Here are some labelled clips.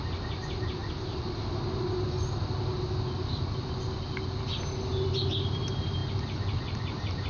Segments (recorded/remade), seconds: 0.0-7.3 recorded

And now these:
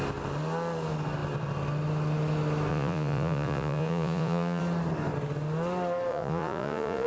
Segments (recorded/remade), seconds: 0.0-2.7 recorded; 2.7-4.6 remade; 4.6-6.1 recorded; 6.1-7.1 remade

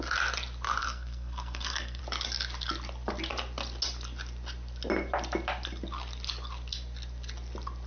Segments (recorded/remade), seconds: 0.0-0.8 recorded; 0.8-2.0 remade; 2.0-7.9 recorded

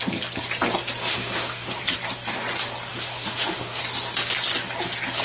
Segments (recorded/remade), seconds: 0.0-1.1 recorded; 1.1-1.8 remade; 1.8-2.9 recorded; 2.9-3.8 remade; 3.8-5.2 recorded

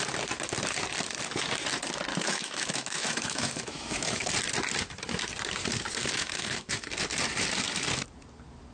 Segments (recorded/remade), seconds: 0.0-2.1 recorded; 2.1-4.3 remade; 4.3-6.0 recorded; 6.0-7.0 remade; 7.0-8.7 recorded

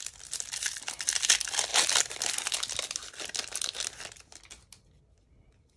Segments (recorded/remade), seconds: 0.0-5.8 recorded